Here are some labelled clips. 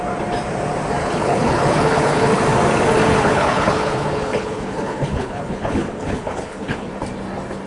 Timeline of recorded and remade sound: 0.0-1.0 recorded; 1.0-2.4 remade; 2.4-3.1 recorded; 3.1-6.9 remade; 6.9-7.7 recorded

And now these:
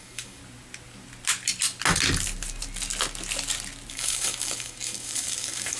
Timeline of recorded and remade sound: 0.0-0.4 remade; 0.4-3.9 recorded; 3.9-5.8 remade

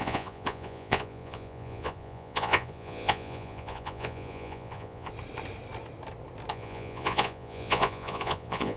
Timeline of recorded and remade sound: 0.0-5.1 remade; 5.1-6.5 recorded; 6.5-8.8 remade